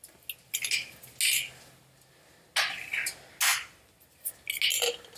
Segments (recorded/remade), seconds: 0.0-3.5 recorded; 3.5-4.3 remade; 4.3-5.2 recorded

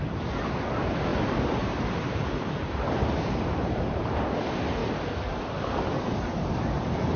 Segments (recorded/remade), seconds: 0.0-4.8 remade; 4.8-6.2 recorded; 6.2-7.2 remade

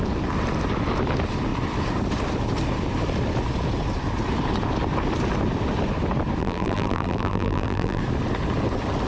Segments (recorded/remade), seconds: 0.0-6.4 recorded; 6.4-8.0 remade; 8.0-9.1 recorded

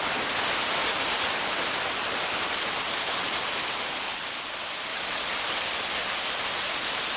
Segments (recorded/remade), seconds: 0.0-0.8 recorded; 0.8-3.8 remade; 3.8-4.9 recorded; 4.9-5.6 remade; 5.6-6.0 recorded; 6.0-7.2 remade

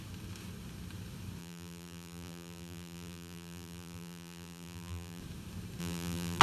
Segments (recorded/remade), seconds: 0.0-1.4 recorded; 1.4-5.2 remade; 5.2-5.8 recorded; 5.8-6.4 remade

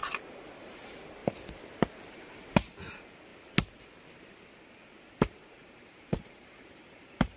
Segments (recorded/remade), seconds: 0.0-0.6 recorded; 0.6-1.2 remade; 1.2-2.2 recorded; 2.2-3.3 remade; 3.3-5.3 recorded; 5.3-7.4 remade